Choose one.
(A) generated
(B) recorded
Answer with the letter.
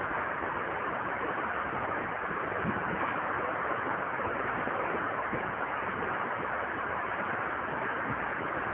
B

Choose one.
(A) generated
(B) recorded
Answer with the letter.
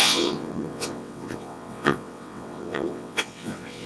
A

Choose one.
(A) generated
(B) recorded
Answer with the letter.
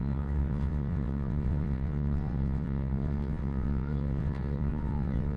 A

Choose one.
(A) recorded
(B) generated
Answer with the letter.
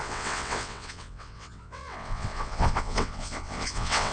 B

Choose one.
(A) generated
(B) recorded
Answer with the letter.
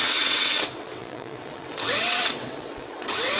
A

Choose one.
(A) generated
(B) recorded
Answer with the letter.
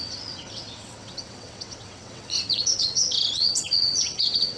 A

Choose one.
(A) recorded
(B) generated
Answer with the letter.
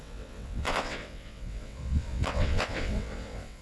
B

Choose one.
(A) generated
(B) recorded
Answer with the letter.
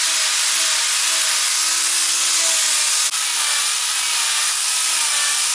B